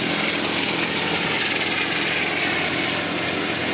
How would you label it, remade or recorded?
recorded